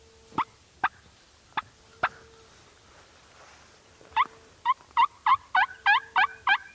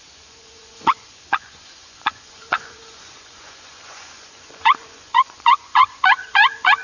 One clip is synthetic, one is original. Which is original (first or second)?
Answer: first